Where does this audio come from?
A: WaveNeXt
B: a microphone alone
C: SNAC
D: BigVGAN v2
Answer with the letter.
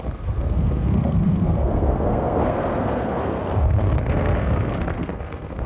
C